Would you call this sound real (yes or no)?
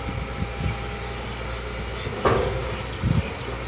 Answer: yes